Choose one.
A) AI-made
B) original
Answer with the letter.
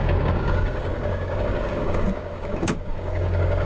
A